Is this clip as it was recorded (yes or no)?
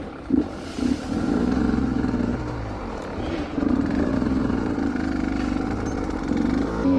no